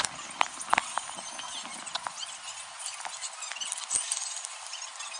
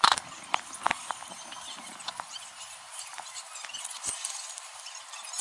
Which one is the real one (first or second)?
first